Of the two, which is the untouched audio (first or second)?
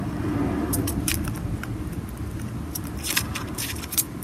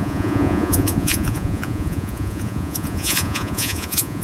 first